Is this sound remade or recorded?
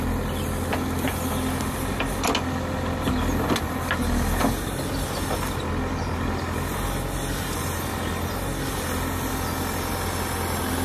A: recorded